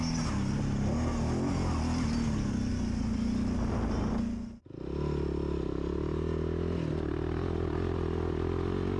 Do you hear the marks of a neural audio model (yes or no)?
no